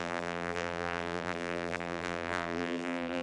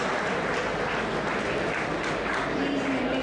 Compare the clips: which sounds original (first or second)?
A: second